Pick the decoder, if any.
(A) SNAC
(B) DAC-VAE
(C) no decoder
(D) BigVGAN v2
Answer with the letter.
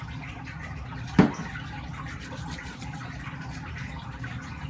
C